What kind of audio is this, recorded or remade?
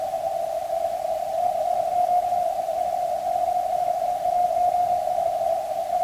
recorded